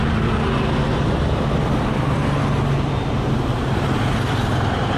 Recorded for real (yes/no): yes